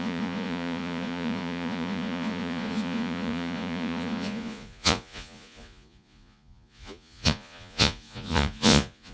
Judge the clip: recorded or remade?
remade